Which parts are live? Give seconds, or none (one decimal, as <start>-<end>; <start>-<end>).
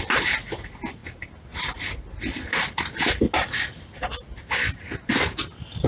0.0-5.9